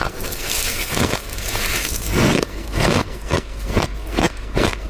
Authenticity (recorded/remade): remade